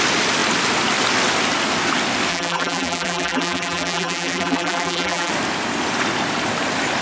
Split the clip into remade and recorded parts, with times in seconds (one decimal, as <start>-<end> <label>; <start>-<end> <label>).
0.0-2.3 recorded; 2.3-5.3 remade; 5.3-7.0 recorded